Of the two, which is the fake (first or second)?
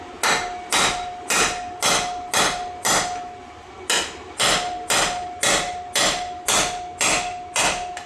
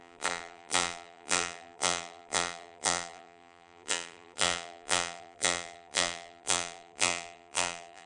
second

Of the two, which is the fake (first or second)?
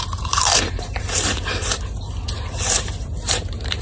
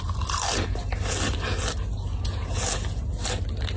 first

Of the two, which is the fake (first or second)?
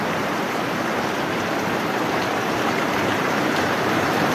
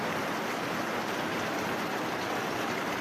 first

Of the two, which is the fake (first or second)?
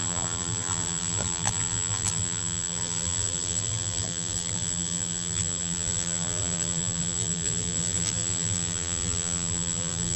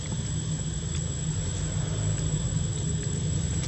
first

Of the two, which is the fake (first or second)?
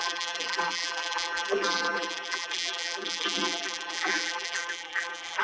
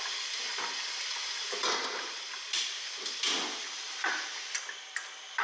first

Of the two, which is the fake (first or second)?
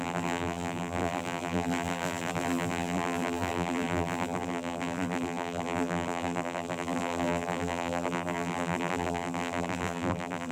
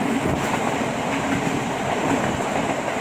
first